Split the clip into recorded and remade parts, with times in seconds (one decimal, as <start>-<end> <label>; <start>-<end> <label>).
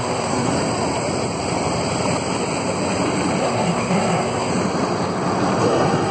0.0-0.5 remade; 0.5-3.4 recorded; 3.4-4.5 remade; 4.5-5.6 recorded; 5.6-6.1 remade